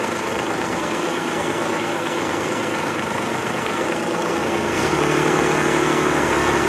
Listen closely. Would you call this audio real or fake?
fake